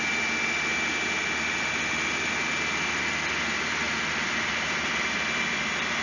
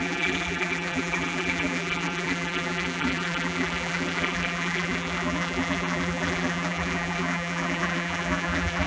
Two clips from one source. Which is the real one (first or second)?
first